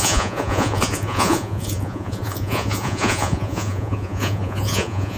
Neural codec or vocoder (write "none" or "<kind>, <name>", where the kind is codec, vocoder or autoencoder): vocoder, Vocos